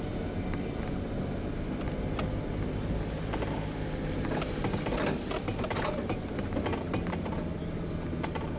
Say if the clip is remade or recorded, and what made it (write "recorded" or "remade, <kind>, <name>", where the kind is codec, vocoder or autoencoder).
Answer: recorded